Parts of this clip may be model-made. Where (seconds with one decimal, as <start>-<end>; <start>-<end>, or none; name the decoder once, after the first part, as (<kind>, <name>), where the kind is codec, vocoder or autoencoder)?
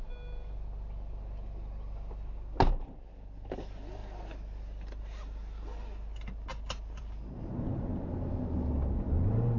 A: none